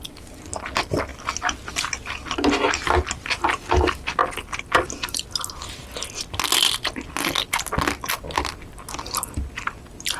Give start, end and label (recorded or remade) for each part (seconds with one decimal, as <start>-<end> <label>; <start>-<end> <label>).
0.0-10.2 recorded